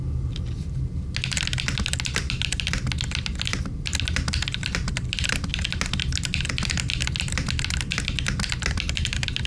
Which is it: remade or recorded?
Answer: recorded